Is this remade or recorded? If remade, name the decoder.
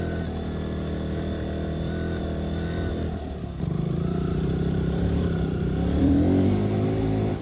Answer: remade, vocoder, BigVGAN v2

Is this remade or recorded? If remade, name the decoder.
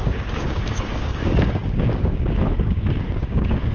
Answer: remade, codec, DAC